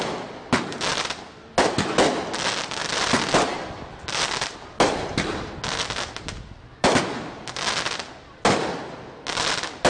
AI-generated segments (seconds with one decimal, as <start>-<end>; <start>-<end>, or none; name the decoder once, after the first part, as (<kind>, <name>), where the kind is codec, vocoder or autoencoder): none